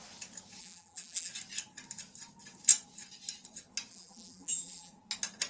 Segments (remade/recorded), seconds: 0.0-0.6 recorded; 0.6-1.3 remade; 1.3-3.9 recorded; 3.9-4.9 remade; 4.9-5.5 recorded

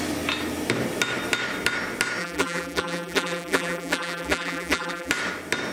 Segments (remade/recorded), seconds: 0.0-2.2 recorded; 2.2-5.1 remade; 5.1-5.7 recorded